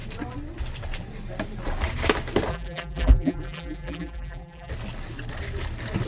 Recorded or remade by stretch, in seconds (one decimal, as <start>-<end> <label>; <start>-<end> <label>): 0.0-2.5 recorded; 2.5-4.7 remade; 4.7-6.1 recorded